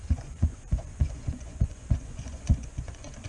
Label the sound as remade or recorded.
remade